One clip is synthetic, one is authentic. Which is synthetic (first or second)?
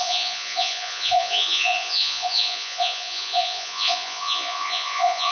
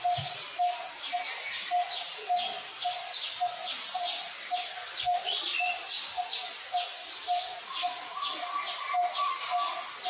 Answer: first